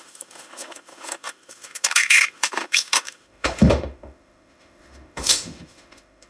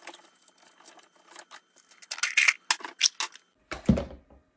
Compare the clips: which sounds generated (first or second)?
first